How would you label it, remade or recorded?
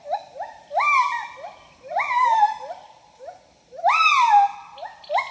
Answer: recorded